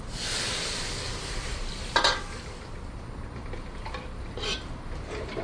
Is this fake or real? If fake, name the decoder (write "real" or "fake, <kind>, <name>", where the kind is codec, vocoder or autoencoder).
real